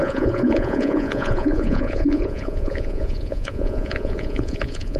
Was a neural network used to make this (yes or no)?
yes